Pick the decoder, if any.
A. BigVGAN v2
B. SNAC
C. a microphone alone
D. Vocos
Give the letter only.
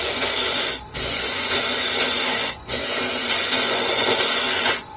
D